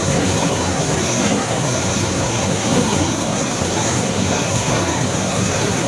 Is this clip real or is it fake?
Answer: fake